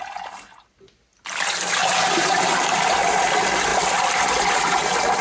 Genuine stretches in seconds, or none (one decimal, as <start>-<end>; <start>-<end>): 0.0-1.8; 2.4-5.2